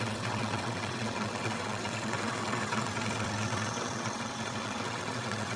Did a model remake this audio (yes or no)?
yes